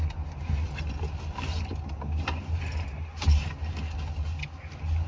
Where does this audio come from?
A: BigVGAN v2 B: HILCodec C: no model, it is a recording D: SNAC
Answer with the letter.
C